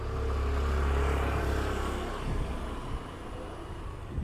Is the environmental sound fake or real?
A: real